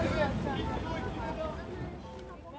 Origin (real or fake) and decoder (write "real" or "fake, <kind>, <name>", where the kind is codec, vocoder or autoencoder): real